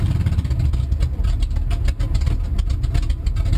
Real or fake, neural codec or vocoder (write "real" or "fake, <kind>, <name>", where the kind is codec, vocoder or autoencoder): real